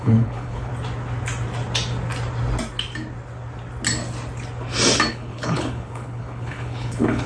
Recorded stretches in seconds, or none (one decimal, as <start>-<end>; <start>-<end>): 0.7-5.1